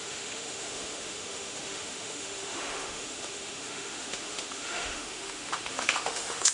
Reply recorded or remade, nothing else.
remade